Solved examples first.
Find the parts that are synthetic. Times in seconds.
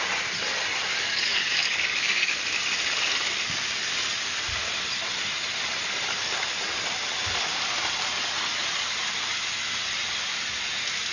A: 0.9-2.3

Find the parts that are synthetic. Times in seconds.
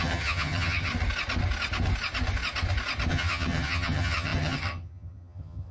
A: 0.0-0.9; 3.1-5.7